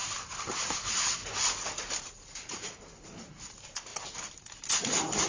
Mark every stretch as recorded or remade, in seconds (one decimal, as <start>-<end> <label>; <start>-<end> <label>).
0.0-1.2 remade; 1.2-2.0 recorded; 2.0-3.9 remade; 3.9-5.3 recorded